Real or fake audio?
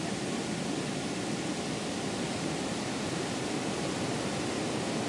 real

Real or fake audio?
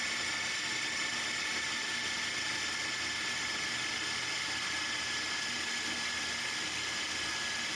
real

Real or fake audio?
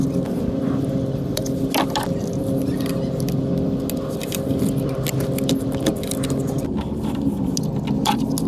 real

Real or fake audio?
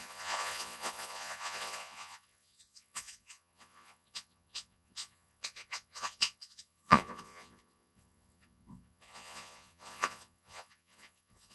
fake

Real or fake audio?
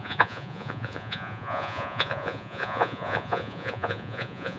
fake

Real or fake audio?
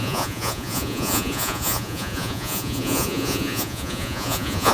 fake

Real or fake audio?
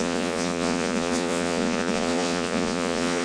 fake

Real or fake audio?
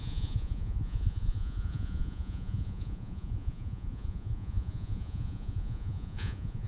fake